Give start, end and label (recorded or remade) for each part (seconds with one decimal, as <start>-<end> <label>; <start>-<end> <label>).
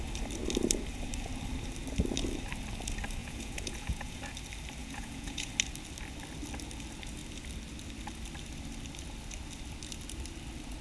0.0-3.2 recorded; 3.2-4.2 remade; 4.2-4.8 recorded; 4.8-5.5 remade; 5.5-10.8 recorded